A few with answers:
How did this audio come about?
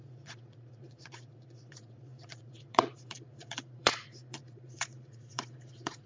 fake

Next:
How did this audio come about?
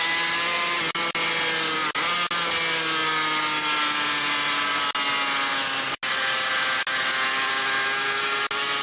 real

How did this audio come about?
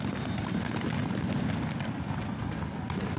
real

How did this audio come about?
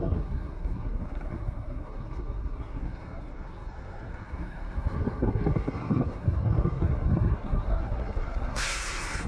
fake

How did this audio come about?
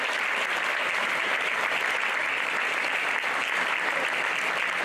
real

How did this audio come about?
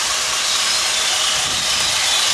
real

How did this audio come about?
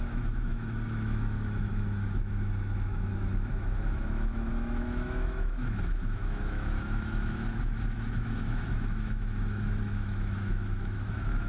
fake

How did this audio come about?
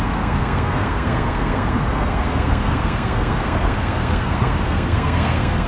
fake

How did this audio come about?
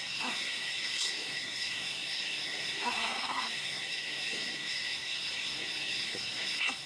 fake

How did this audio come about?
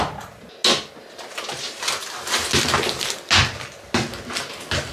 real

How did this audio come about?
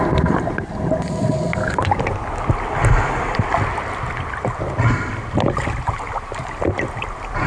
real